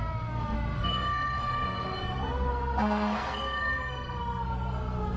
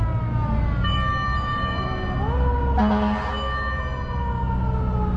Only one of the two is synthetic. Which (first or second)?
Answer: first